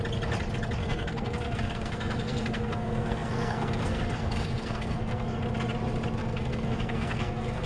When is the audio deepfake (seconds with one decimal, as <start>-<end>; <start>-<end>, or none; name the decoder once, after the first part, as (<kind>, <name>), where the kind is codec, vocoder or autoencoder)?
0.8-5.4 (codec, SNAC); 6.2-7.7

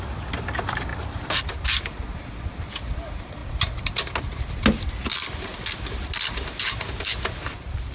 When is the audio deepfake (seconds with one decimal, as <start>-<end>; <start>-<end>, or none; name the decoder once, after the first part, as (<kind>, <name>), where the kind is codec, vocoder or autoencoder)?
0.0-0.9 (vocoder, BigVGAN v2); 1.4-5.5; 6.6-7.9

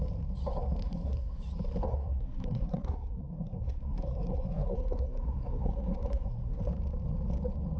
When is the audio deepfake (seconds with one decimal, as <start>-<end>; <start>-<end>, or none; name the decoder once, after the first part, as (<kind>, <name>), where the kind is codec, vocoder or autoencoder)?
0.8-1.4 (codec, SNAC); 1.9-6.6

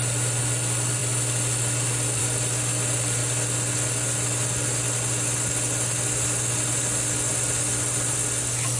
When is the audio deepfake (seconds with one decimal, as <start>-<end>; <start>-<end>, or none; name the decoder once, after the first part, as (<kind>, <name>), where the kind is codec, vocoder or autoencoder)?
none

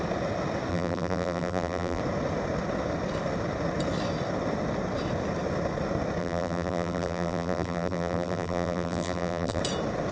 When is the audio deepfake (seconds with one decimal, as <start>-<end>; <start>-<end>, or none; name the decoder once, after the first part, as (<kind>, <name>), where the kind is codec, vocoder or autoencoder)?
0.7-2.0 (vocoder, BigVGAN v2); 6.2-9.6

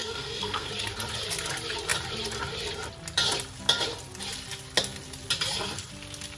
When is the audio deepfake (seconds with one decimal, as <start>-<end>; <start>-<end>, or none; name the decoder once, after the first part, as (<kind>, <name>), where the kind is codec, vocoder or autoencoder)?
0.0-0.7 (codec, SNAC)